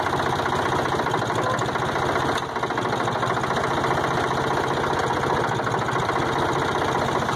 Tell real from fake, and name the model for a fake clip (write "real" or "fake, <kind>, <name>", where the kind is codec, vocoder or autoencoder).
real